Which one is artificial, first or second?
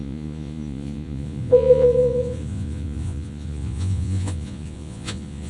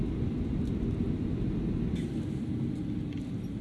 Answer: first